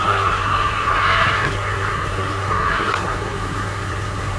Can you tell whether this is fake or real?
fake